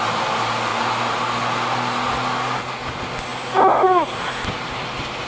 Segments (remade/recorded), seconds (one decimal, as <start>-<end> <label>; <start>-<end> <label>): 0.0-5.3 recorded